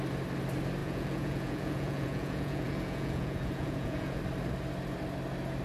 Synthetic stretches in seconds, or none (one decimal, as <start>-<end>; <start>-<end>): 0.8-4.2